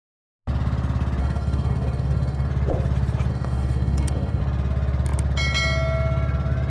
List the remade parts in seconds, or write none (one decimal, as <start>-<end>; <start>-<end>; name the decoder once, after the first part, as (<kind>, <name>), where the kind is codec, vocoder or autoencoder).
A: 1.2-2.5 (codec, DAC); 3.3-4.4